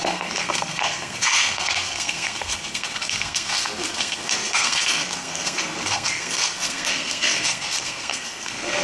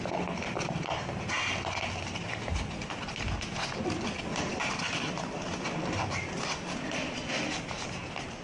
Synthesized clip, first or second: first